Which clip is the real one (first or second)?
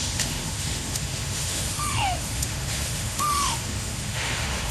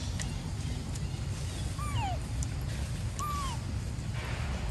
second